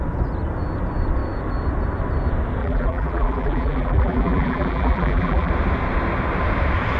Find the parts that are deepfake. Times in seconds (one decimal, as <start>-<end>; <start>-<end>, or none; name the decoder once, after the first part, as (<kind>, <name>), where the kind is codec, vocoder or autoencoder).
2.6-5.5 (vocoder, BigVGAN v2)